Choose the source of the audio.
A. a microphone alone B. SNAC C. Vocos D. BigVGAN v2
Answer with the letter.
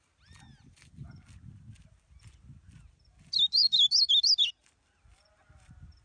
A